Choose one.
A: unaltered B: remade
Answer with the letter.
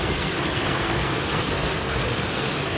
B